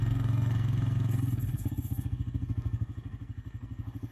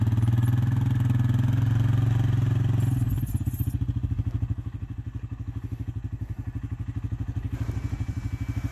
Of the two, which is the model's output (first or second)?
first